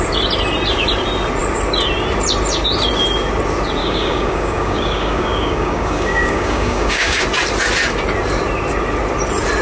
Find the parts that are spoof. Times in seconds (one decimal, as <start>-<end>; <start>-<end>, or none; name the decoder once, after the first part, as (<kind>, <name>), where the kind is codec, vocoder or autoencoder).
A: 3.8-7.2 (codec, DAC)